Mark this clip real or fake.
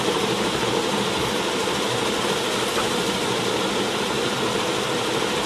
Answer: real